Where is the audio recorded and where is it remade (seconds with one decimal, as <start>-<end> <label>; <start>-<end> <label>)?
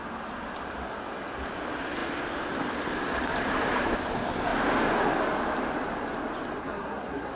0.0-6.6 recorded; 6.6-7.3 remade